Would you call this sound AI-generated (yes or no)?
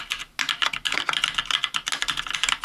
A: no